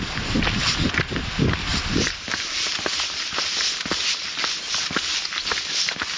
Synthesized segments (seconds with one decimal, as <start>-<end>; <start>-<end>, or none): 1.7-2.4